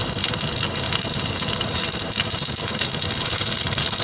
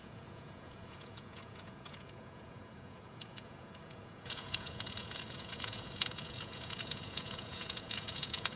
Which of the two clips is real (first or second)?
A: first